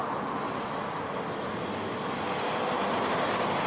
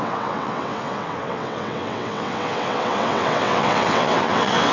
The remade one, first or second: second